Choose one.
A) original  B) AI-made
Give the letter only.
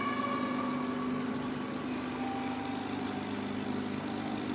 A